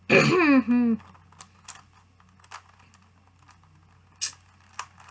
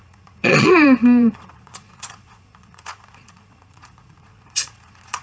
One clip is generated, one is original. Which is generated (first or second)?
second